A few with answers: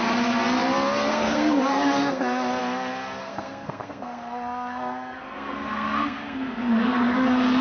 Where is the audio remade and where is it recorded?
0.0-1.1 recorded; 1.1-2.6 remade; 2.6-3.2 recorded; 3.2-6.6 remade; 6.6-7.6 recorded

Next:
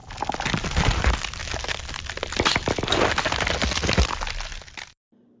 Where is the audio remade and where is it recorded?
0.0-5.4 recorded

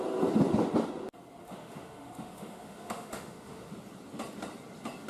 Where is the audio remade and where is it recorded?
0.0-1.4 recorded; 1.4-3.7 remade; 3.7-5.1 recorded

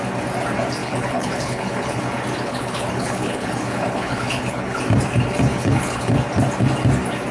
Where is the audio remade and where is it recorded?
0.0-0.8 recorded; 0.8-2.0 remade; 2.0-2.4 recorded; 2.4-4.8 remade; 4.8-5.5 recorded; 5.5-6.1 remade; 6.1-7.3 recorded

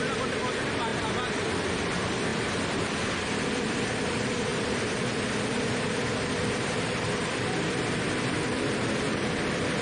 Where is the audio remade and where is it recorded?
0.0-0.9 remade; 0.9-1.5 recorded; 1.5-9.8 remade

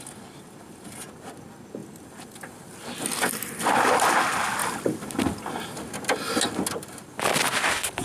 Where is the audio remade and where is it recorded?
0.0-8.0 recorded

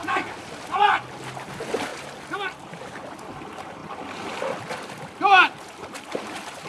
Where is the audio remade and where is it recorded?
0.0-6.7 recorded

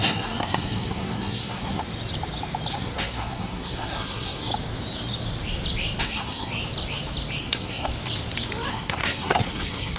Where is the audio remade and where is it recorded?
0.0-1.8 remade; 1.8-2.7 recorded; 2.7-4.5 remade; 4.5-6.0 recorded; 6.0-6.5 remade; 6.5-7.4 recorded; 7.4-7.9 remade; 7.9-8.7 recorded; 8.7-10.0 remade